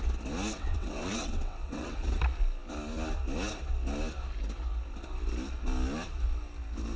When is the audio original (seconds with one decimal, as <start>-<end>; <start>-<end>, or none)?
0.0-0.5; 2.2-7.0

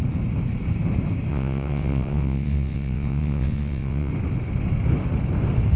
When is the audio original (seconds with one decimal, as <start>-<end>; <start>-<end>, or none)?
0.0-1.3; 4.1-5.8

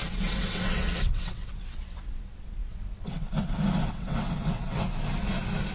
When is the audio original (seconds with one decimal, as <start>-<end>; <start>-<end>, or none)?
3.3-3.8; 4.9-5.7

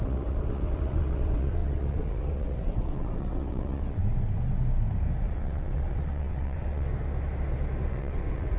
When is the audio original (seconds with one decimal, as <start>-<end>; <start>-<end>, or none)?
4.0-5.2; 6.9-7.9

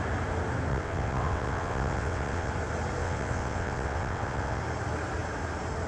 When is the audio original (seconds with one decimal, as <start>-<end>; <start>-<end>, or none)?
0.0-0.7; 2.5-3.0; 4.6-5.9

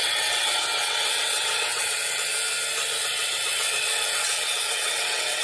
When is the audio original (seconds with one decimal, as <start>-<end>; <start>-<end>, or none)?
2.3-3.0

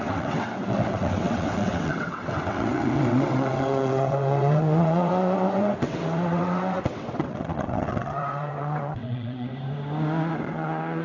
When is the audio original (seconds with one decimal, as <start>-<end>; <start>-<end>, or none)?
9.5-10.3